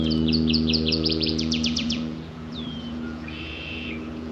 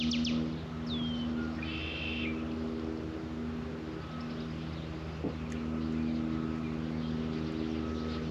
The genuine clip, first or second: second